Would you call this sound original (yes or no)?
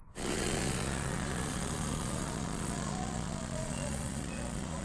no